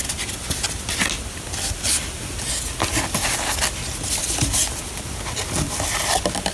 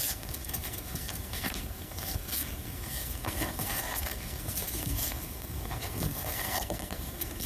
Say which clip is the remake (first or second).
second